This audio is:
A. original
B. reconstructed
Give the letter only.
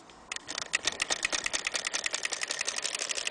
A